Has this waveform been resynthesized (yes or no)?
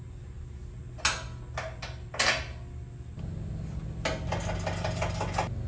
no